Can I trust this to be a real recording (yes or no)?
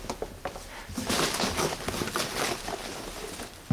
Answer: yes